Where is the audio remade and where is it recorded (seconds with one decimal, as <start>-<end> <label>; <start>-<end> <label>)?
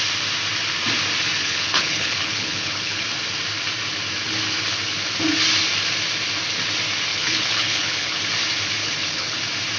0.0-1.4 recorded; 1.4-3.0 remade; 3.0-7.1 recorded; 7.1-8.2 remade; 8.2-8.8 recorded; 8.8-9.4 remade; 9.4-9.8 recorded